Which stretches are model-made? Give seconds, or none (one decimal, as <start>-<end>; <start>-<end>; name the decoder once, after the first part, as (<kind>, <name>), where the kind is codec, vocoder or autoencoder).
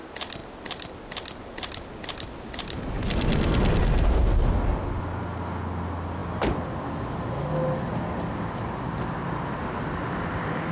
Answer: none